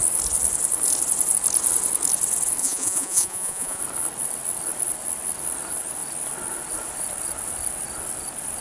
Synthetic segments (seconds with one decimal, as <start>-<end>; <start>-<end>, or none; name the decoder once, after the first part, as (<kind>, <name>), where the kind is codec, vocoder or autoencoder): 2.6-3.8 (vocoder, Vocos)